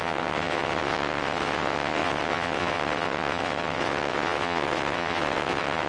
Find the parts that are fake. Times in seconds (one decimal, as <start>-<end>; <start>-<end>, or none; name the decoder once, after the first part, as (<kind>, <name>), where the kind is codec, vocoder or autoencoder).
0.0-5.9 (vocoder, WaveNeXt)